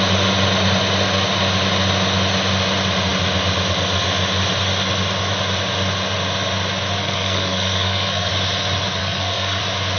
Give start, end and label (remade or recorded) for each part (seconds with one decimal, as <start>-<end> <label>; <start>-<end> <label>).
0.0-7.0 recorded; 7.0-8.3 remade; 8.3-9.0 recorded; 9.0-9.6 remade; 9.6-10.0 recorded